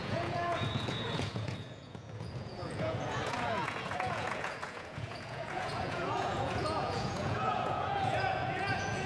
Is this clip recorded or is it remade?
remade